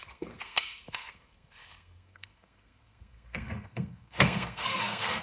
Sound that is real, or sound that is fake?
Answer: fake